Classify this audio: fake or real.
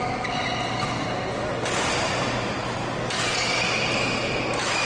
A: real